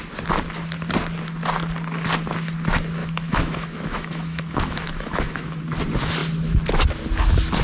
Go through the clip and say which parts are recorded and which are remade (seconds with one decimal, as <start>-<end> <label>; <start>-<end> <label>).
0.0-3.0 recorded; 3.0-5.6 remade; 5.6-7.6 recorded